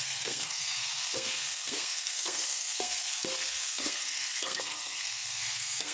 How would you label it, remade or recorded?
remade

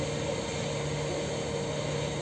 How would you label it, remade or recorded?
recorded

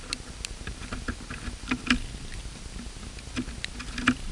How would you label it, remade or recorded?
recorded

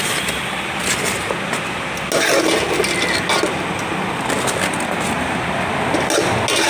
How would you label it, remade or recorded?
recorded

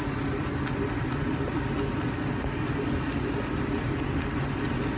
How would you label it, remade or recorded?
recorded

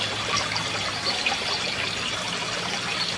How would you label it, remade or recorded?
recorded